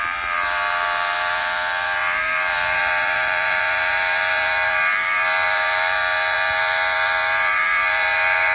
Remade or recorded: remade